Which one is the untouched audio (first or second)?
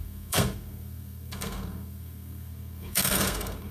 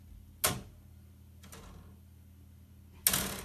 second